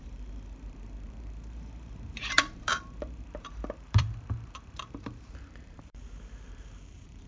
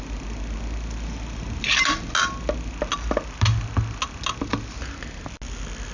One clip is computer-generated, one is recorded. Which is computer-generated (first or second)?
first